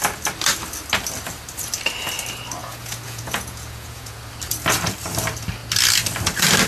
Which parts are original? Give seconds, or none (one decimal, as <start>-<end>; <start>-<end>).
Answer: 0.0-2.6; 4.2-6.7